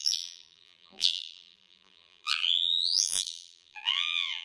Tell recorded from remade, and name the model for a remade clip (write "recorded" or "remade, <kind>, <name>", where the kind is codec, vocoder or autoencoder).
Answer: remade, vocoder, BigVGAN v2